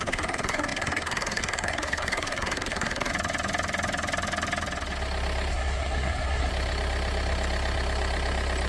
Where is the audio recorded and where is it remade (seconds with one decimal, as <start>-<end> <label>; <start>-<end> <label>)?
0.0-3.1 remade; 3.1-5.5 recorded; 5.5-6.5 remade; 6.5-8.7 recorded